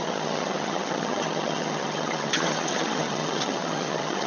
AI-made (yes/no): yes